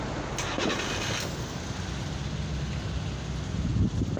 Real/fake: real